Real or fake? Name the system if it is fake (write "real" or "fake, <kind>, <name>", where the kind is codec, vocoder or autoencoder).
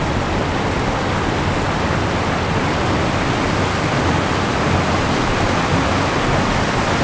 real